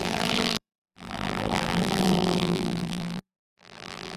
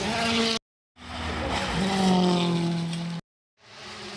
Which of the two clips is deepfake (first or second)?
first